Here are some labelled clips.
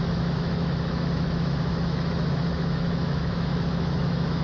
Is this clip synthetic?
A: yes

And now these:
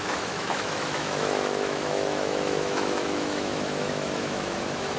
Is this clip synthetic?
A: yes